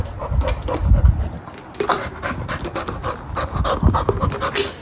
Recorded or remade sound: recorded